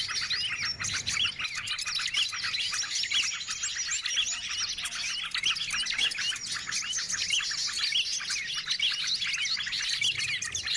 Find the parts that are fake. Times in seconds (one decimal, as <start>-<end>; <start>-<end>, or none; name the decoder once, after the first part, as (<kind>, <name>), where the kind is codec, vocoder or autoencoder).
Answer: none